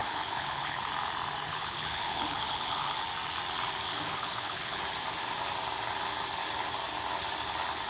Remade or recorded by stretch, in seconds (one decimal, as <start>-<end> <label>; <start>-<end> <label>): 0.0-0.8 remade; 0.8-1.5 recorded; 1.5-3.0 remade; 3.0-3.9 recorded; 3.9-4.8 remade; 4.8-7.9 recorded